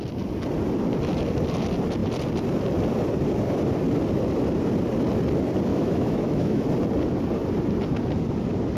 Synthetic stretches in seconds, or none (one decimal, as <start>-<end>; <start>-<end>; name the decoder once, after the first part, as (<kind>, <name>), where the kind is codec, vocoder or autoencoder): 5.7-6.7 (autoencoder, DAC-VAE)